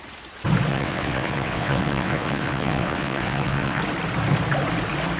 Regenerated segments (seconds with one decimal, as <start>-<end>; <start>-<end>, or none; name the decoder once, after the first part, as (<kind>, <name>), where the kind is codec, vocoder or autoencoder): 0.7-3.8 (vocoder, WaveNeXt)